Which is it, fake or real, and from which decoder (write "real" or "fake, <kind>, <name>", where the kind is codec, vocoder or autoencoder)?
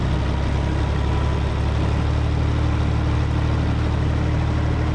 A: real